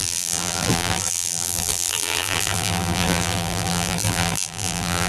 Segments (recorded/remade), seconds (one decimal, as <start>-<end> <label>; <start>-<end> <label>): 0.0-5.1 remade